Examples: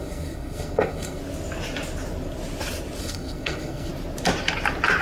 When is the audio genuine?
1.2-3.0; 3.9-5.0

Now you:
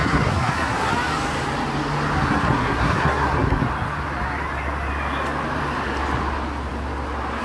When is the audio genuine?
0.9-2.3; 3.6-7.4

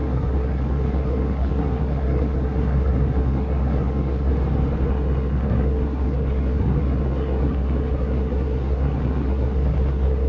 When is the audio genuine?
4.3-4.9